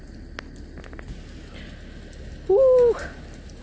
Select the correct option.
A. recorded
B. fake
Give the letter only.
A